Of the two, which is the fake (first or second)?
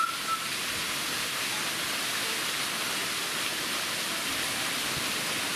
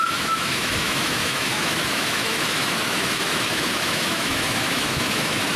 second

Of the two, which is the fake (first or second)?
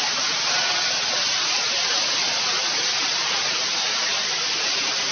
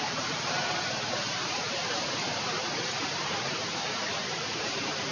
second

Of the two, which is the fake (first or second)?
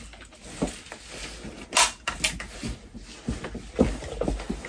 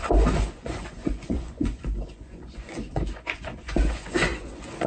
second